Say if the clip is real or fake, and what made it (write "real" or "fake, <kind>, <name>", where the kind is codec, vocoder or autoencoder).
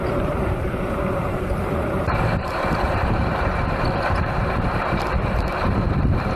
fake, vocoder, BigVGAN v2